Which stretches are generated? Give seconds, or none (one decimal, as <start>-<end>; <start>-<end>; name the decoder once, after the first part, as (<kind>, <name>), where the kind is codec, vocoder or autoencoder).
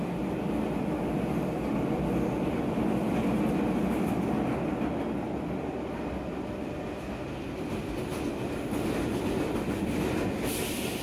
none